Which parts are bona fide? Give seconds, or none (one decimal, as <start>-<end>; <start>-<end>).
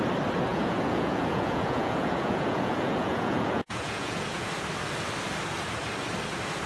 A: 0.0-0.5; 4.5-6.7